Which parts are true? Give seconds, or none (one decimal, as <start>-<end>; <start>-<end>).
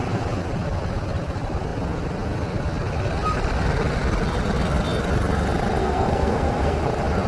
0.0-5.8; 6.8-7.3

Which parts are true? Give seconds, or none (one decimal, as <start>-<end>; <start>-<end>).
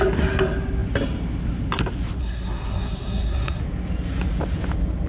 0.0-2.2; 3.6-5.1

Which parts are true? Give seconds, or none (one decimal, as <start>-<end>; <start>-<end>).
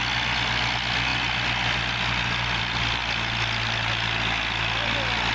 0.0-5.3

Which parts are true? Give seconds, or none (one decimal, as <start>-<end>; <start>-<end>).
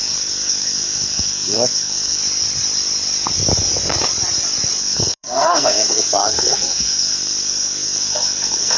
2.2-4.8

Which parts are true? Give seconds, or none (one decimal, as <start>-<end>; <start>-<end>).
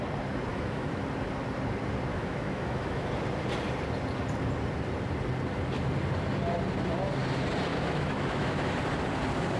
0.0-0.5; 1.0-2.1; 3.1-7.7; 8.7-9.6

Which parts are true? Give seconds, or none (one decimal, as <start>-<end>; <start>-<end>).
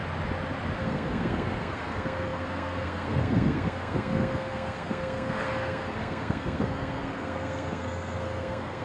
0.0-0.8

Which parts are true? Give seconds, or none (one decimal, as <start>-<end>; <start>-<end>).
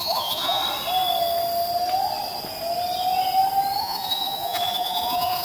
0.6-3.8